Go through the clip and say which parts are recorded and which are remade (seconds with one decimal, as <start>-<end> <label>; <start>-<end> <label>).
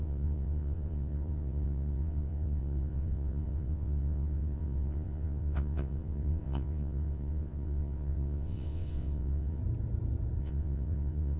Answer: 0.0-9.6 remade; 9.6-10.4 recorded; 10.4-11.4 remade